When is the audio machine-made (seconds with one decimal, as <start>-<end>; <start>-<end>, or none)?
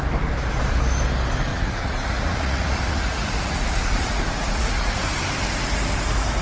1.5-4.9